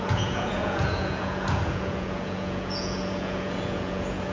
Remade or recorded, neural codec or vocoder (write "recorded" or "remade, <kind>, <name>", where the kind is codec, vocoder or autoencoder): remade, vocoder, Vocos